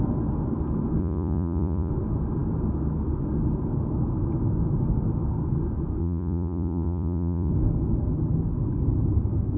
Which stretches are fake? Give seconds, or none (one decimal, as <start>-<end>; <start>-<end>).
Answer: 1.0-1.9; 6.0-7.5